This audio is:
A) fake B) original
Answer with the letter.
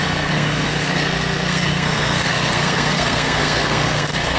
A